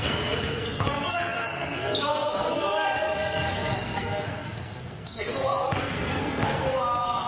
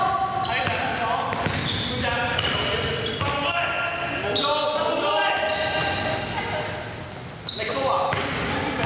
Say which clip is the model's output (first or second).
first